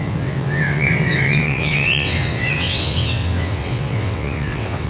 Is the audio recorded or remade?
remade